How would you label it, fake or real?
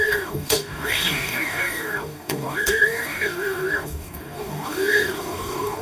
fake